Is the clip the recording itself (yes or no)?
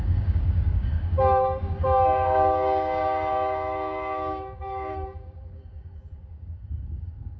no